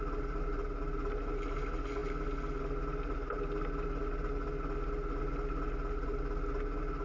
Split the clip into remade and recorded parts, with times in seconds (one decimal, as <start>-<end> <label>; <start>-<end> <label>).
0.0-7.0 recorded